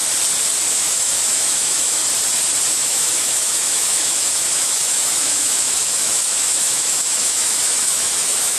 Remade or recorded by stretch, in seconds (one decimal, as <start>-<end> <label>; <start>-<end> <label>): 0.0-0.7 recorded; 0.7-2.0 remade; 2.0-2.7 recorded; 2.7-8.6 remade